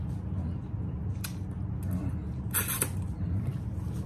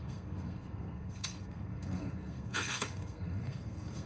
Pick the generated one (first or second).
second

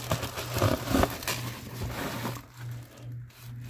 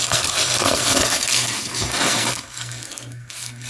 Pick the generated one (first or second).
second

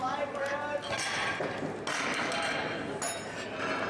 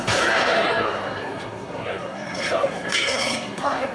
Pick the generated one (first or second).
second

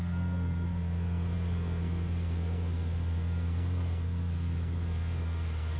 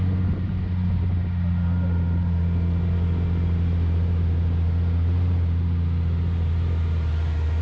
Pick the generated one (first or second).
first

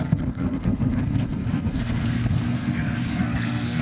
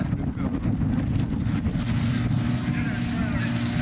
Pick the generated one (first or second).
first